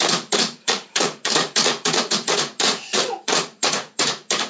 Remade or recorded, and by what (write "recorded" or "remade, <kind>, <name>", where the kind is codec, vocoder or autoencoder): remade, vocoder, Vocos